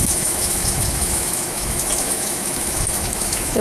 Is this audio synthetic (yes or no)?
yes